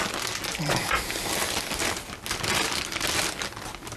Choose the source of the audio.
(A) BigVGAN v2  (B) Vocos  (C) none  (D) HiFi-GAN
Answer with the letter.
C